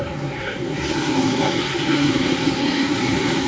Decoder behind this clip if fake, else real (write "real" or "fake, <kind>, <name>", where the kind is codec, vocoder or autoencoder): fake, codec, SNAC